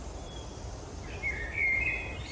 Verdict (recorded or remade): recorded